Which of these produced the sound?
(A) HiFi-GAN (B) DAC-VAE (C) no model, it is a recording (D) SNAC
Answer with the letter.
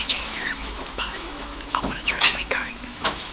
B